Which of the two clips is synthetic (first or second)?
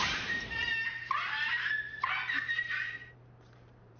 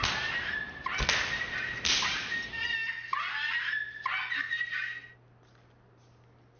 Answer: first